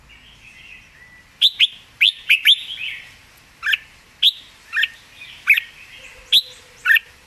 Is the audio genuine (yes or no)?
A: yes